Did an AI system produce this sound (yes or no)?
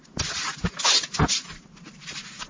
no